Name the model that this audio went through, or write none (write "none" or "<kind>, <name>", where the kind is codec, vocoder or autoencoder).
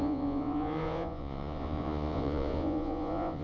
vocoder, Vocos